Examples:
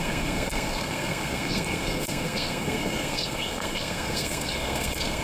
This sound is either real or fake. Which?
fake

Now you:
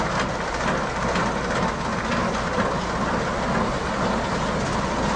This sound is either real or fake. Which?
real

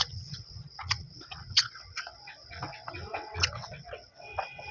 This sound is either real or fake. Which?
fake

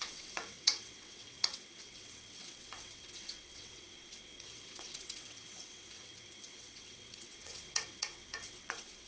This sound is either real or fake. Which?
fake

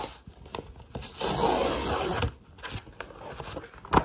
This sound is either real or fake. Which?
real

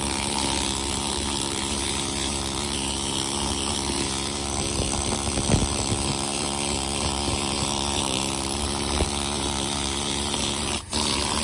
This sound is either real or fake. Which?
real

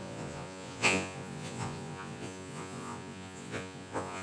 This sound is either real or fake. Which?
fake